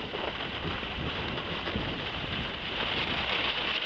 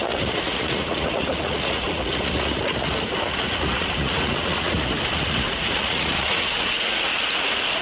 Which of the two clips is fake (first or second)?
second